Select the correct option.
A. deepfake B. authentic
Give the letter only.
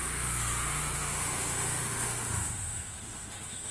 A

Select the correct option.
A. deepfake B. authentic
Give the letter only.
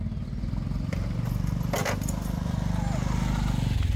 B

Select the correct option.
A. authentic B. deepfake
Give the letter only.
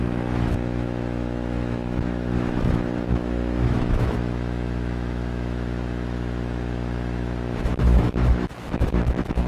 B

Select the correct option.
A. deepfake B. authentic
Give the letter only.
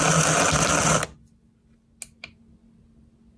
B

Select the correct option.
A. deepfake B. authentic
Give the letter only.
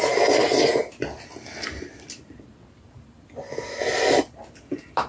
B